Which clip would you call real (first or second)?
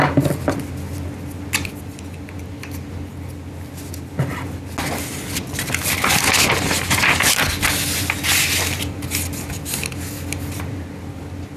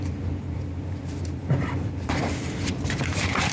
first